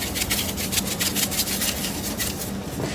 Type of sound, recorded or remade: recorded